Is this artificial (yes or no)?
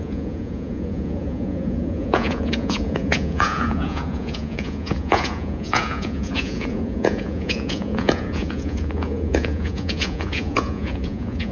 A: yes